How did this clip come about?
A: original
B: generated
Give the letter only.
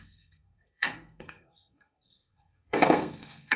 B